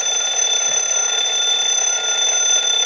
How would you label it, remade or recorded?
recorded